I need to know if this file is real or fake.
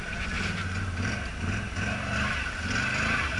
real